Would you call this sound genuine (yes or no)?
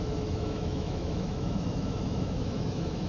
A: no